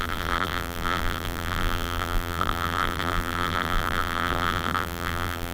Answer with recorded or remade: remade